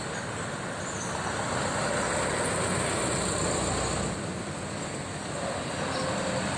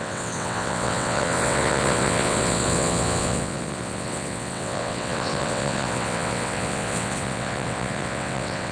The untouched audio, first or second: first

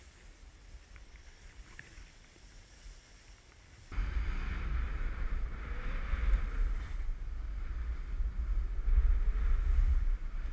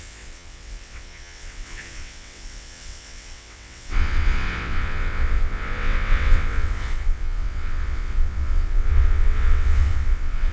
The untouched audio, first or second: first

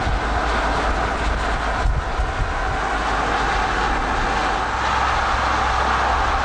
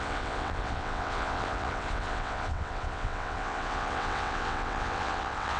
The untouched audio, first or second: first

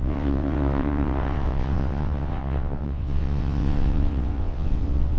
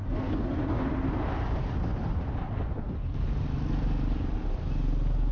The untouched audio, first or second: second